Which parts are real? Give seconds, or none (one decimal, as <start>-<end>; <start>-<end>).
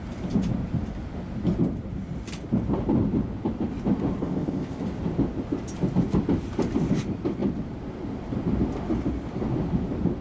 0.0-4.2; 4.8-10.2